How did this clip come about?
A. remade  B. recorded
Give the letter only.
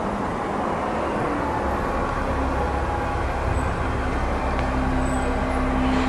B